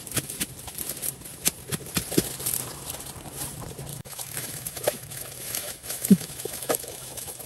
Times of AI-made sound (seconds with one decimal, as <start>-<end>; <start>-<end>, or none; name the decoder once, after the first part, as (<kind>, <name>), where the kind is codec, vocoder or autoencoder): 3.9-7.5 (autoencoder, DAC-VAE)